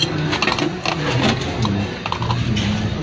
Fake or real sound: real